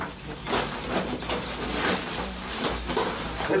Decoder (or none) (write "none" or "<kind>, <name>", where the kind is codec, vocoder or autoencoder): none